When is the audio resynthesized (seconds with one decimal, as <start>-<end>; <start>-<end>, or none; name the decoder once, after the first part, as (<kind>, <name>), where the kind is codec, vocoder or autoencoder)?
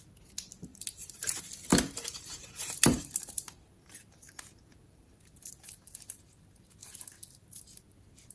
0.7-1.4 (vocoder, BigVGAN v2); 2.1-5.5